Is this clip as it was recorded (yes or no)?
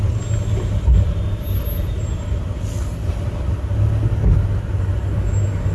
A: yes